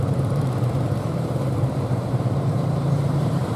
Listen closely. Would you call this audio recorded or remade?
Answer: remade